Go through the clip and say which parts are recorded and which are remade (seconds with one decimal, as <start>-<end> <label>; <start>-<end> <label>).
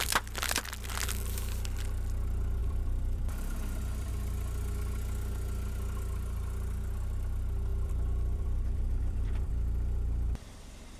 0.0-2.6 recorded; 2.6-4.1 remade; 4.1-7.7 recorded; 7.7-9.5 remade; 9.5-11.0 recorded